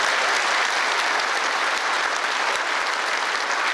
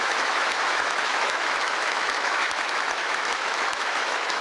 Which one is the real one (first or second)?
first